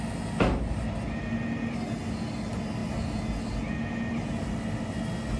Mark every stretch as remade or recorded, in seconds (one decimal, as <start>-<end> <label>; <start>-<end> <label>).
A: 0.0-5.4 recorded